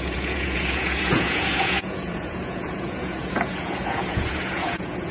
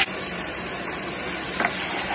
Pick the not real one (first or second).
first